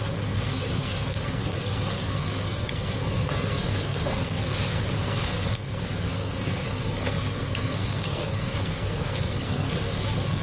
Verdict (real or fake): fake